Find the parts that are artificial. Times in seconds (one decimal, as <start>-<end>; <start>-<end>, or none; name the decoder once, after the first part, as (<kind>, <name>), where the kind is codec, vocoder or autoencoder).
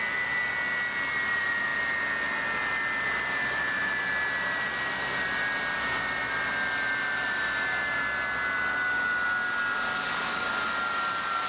none